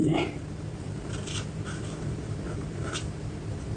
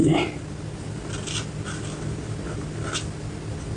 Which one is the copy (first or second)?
first